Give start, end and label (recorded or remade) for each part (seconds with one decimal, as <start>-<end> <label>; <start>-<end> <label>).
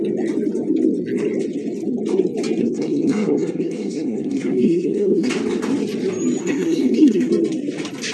0.0-2.6 recorded; 2.6-5.3 remade; 5.3-6.4 recorded; 6.4-7.3 remade; 7.3-8.1 recorded